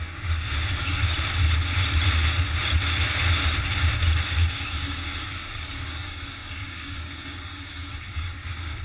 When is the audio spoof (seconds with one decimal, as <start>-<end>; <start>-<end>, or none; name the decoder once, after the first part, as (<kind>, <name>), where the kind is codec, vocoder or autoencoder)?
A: 0.0-1.0 (codec, DAC); 4.5-8.8